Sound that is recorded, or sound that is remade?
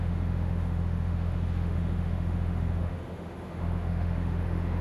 remade